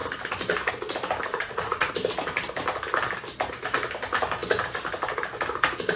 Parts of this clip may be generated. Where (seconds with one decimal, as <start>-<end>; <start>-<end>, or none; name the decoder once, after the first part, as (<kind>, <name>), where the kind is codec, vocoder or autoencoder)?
1.3-1.9 (vocoder, Vocos)